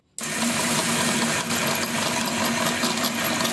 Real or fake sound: real